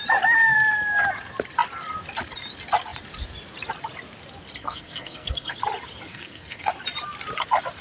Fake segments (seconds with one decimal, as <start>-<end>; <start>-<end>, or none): 4.6-5.6; 6.1-6.7